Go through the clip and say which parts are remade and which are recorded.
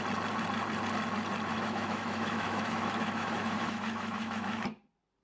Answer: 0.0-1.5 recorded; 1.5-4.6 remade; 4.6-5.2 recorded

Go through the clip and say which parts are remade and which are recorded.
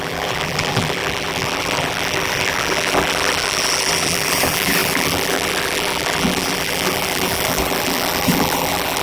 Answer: 0.0-9.0 remade